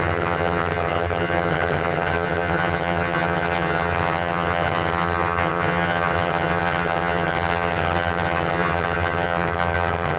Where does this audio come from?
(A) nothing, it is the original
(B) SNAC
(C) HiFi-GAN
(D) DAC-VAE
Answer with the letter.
C